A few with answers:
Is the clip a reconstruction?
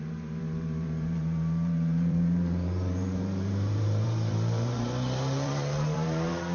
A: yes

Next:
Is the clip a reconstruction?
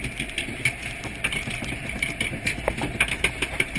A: no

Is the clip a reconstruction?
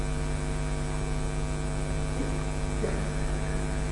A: no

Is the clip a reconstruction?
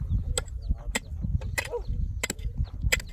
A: no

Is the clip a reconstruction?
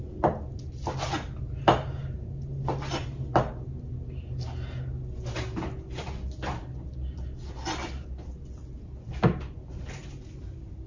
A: no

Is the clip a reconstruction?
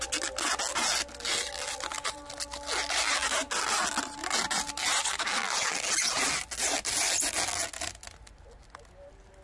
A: no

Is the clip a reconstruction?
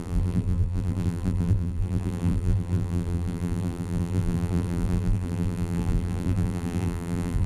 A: yes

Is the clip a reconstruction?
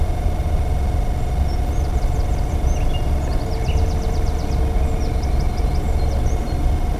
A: no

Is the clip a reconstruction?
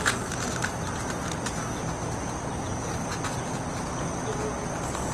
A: no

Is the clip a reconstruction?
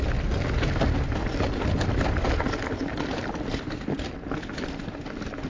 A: yes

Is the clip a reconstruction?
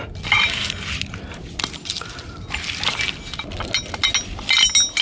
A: no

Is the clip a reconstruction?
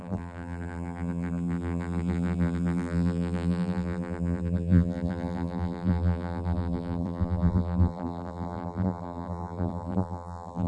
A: yes